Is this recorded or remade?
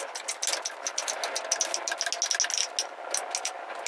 recorded